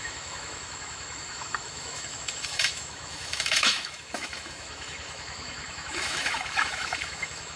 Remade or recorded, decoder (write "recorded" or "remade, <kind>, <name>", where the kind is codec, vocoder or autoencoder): remade, autoencoder, DAC-VAE